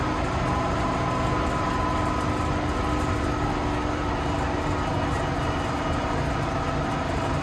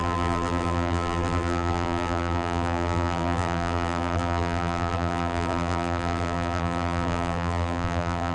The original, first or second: first